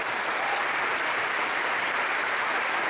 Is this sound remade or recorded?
recorded